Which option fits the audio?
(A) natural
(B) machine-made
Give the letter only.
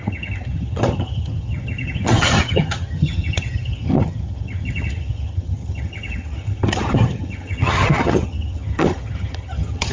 B